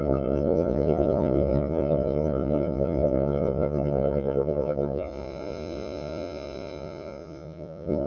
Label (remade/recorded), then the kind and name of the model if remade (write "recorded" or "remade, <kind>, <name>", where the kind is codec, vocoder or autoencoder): remade, vocoder, Vocos